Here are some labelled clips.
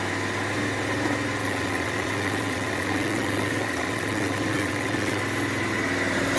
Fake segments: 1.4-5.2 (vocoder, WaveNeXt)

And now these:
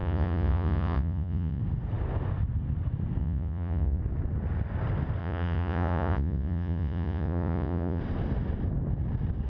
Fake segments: 0.0-1.6 (vocoder, Vocos); 3.2-4.0; 5.2-8.0

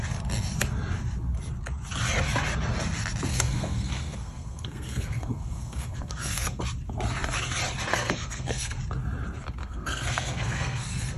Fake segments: 3.3-6.6 (codec, SNAC); 7.9-8.8; 9.6-11.2

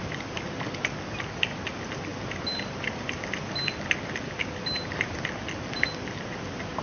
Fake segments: none

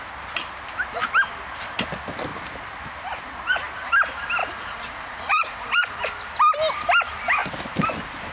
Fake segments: 4.4-6.0 (vocoder, Vocos)

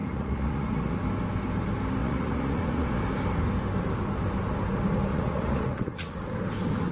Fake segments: 0.0-0.9 (vocoder, Vocos); 2.0-3.0; 5.1-6.2

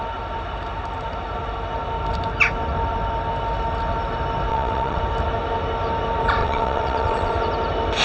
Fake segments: 4.5-5.0 (vocoder, WaveNeXt); 6.4-7.3

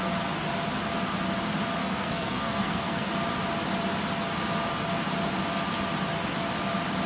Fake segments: 1.8-3.1 (codec, SNAC)